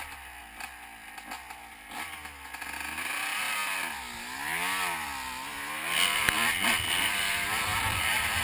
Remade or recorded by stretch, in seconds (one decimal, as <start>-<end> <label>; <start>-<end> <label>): 0.0-0.4 remade; 0.4-1.7 recorded; 1.7-3.6 remade; 3.6-6.9 recorded; 6.9-8.4 remade

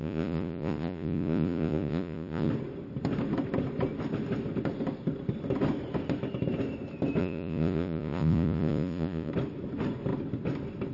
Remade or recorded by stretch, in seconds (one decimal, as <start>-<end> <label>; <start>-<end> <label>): 0.0-2.5 remade; 2.5-7.2 recorded; 7.2-9.3 remade; 9.3-10.9 recorded

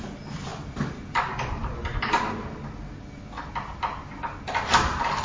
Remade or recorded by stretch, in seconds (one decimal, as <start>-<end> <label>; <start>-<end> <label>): 0.0-5.2 recorded

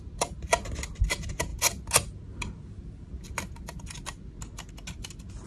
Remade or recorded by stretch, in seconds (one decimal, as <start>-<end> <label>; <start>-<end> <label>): 0.0-5.5 recorded

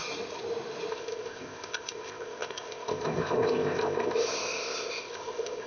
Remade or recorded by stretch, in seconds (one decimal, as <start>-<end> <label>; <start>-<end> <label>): 0.0-0.9 recorded; 0.9-5.7 remade

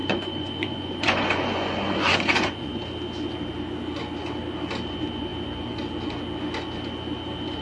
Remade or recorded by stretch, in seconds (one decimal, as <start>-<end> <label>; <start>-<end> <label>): 0.0-2.8 remade; 2.8-7.6 recorded

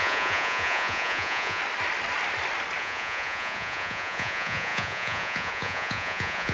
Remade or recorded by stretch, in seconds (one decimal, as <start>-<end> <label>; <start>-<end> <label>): 0.0-1.6 remade; 1.6-2.8 recorded; 2.8-6.5 remade

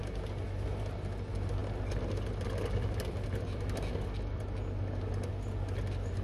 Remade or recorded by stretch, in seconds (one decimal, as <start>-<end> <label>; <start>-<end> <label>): 0.0-6.2 recorded